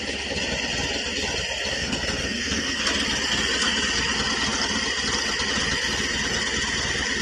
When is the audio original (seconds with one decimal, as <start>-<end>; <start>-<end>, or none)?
0.0-1.7; 2.8-7.2